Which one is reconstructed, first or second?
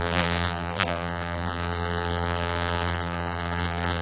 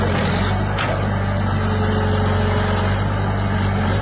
first